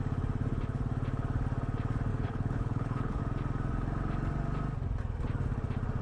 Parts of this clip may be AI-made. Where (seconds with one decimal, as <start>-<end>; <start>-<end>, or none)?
2.1-3.2

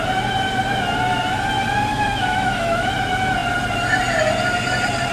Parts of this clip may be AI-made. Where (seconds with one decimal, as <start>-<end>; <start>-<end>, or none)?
1.9-2.9